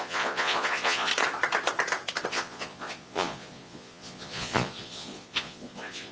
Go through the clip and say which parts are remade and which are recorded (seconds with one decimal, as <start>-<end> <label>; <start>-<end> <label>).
0.0-1.1 remade; 1.1-2.3 recorded; 2.3-6.1 remade